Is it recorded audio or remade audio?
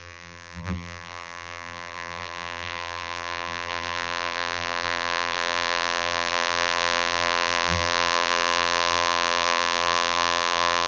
remade